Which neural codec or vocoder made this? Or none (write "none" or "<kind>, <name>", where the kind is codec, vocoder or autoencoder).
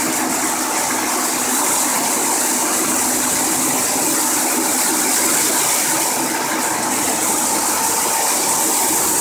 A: none